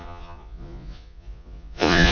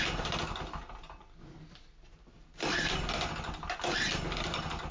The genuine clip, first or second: second